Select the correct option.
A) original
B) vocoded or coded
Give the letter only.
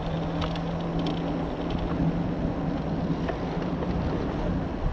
A